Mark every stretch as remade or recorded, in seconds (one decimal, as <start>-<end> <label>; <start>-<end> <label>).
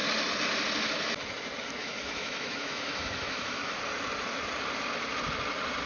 0.0-1.8 recorded; 1.8-3.8 remade; 3.8-5.9 recorded